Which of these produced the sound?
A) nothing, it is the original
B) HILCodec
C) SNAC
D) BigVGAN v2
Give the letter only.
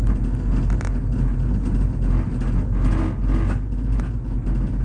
A